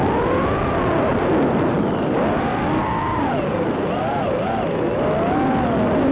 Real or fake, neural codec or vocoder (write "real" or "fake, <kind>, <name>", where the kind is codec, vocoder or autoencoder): real